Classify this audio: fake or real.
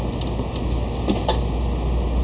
real